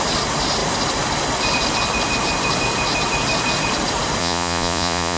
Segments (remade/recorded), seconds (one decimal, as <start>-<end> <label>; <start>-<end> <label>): 0.0-4.2 recorded; 4.2-5.2 remade